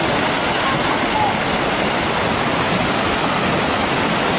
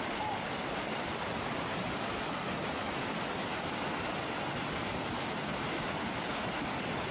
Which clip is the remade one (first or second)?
second